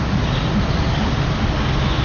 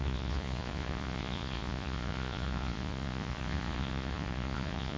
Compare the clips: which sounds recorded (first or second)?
first